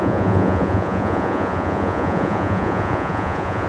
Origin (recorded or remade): remade